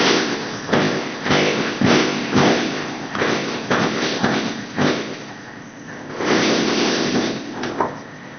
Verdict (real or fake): fake